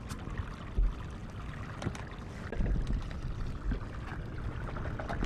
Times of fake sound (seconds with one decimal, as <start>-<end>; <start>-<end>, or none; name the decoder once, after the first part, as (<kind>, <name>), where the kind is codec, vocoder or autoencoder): 1.2-2.0 (vocoder, BigVGAN v2)